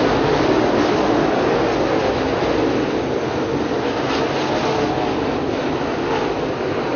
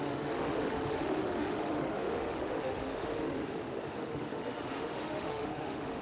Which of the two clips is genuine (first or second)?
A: first